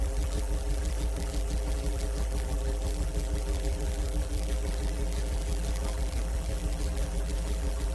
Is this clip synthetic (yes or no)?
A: yes